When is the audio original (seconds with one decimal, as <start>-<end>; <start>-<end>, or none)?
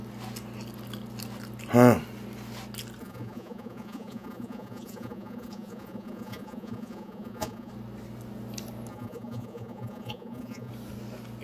0.0-3.0; 7.7-8.9; 10.7-11.4